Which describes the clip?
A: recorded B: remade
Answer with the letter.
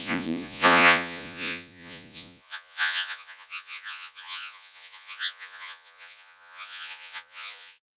B